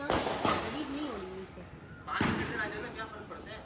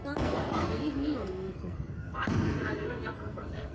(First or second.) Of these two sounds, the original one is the first